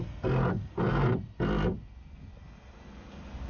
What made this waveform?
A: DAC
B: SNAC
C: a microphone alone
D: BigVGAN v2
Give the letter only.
C